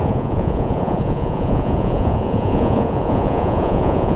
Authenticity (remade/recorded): remade